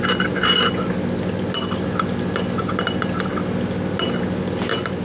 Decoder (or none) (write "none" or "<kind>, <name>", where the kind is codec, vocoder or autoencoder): none